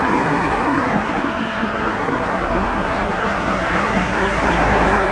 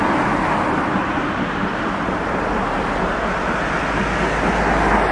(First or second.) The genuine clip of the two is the second